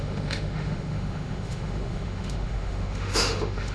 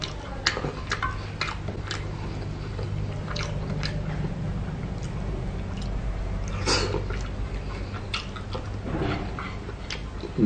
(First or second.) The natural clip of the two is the second